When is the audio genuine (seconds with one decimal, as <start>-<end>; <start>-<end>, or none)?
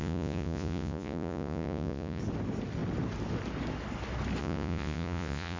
2.2-4.4